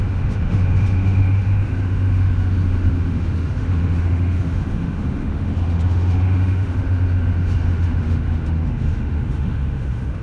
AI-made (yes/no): yes